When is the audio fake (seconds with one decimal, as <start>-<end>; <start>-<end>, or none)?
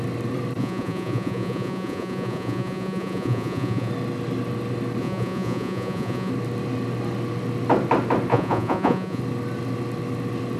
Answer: 0.6-3.9; 5.0-6.3; 8.3-9.2